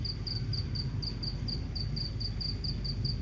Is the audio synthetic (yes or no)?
no